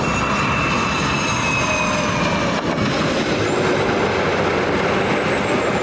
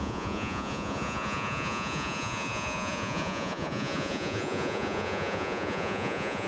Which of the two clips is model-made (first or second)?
second